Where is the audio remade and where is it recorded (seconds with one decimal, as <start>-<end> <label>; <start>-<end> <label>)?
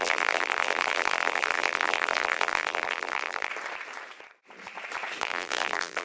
0.0-3.5 remade; 3.5-5.2 recorded; 5.2-6.0 remade